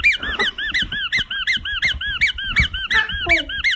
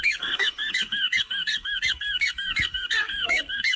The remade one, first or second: second